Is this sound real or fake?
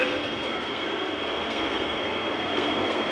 fake